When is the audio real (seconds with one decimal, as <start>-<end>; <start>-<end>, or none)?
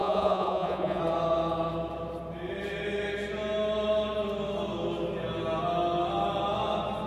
1.0-7.1